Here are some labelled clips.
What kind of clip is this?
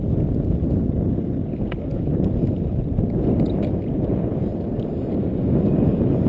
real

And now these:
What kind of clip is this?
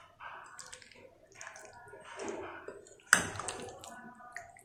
real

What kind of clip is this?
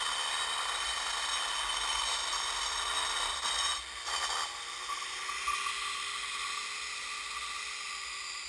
real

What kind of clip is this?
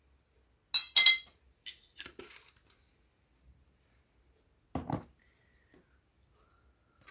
real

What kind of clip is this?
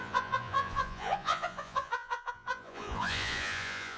fake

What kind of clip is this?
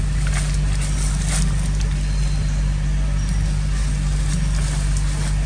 real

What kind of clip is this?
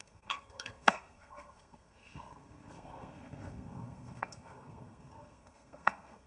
fake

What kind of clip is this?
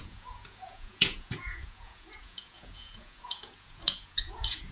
fake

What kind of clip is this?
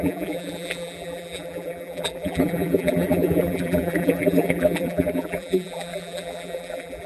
fake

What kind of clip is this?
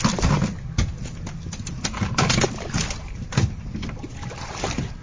real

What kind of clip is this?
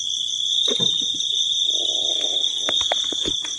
real